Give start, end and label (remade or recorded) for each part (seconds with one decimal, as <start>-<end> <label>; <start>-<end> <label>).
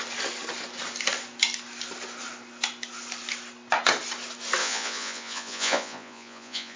0.0-4.6 recorded; 4.6-6.8 remade